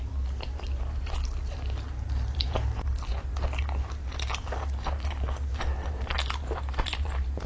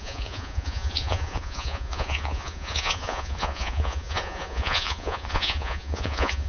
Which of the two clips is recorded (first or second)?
first